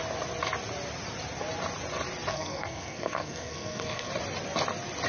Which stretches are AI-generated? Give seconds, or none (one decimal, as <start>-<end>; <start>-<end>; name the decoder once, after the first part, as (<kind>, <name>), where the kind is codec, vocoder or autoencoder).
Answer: 2.3-4.1 (codec, SNAC)